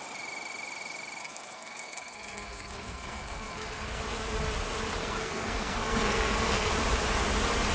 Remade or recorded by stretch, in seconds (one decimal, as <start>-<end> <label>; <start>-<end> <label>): 0.0-1.2 recorded; 1.2-4.0 remade; 4.0-5.0 recorded; 5.0-6.7 remade; 6.7-7.7 recorded